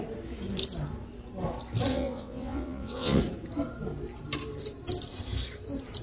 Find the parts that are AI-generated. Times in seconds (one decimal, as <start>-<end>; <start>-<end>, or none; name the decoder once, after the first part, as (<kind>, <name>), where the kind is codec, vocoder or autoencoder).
1.9-3.2 (vocoder, WaveNeXt)